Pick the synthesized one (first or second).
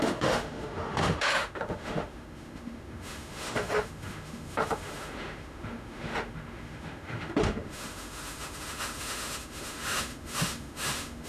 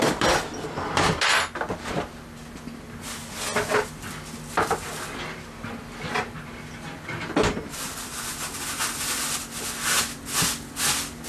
first